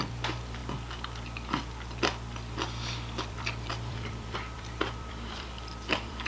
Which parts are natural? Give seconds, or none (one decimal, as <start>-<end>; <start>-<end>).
0.6-3.3